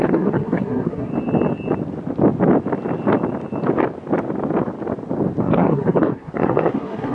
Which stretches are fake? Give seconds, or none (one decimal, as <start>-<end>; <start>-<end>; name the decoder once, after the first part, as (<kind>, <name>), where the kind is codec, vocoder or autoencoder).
0.0-1.1 (codec, SNAC); 5.4-7.1